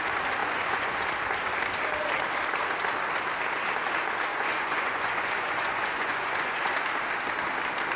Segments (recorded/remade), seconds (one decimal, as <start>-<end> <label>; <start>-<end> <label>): 0.0-0.4 recorded; 0.4-1.0 remade; 1.0-4.3 recorded; 4.3-6.8 remade; 6.8-8.0 recorded